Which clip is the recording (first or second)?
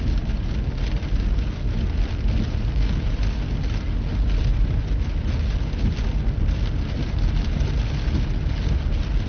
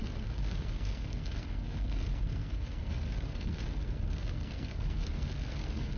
first